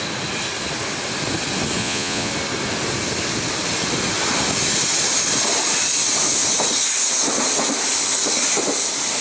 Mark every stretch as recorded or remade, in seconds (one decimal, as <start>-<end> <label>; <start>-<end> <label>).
0.0-1.8 recorded; 1.8-2.3 remade; 2.3-9.2 recorded